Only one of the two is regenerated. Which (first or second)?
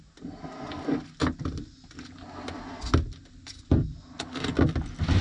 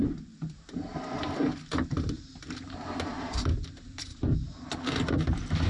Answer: second